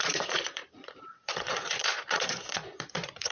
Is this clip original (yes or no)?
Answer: no